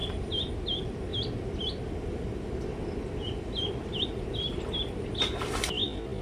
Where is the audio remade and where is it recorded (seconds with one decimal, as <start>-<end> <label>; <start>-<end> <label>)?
0.0-6.2 recorded